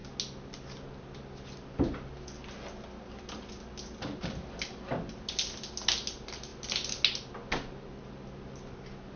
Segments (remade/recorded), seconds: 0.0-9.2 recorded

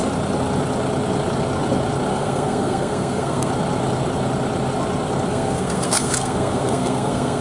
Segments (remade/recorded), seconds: 0.0-2.1 recorded; 2.1-3.5 remade; 3.5-5.3 recorded; 5.3-7.4 remade

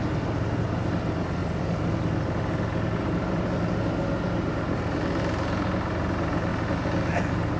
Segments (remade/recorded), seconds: 0.0-7.6 recorded

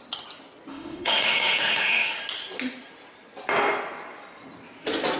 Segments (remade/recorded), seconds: 0.0-0.7 recorded; 0.7-2.2 remade; 2.2-5.2 recorded

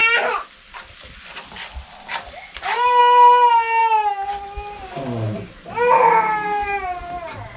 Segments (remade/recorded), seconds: 0.0-6.6 recorded; 6.6-7.6 remade

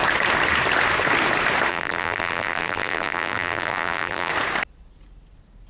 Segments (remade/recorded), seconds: 0.0-1.7 recorded; 1.7-4.3 remade; 4.3-5.7 recorded